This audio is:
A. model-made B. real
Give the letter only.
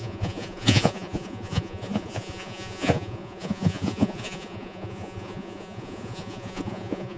A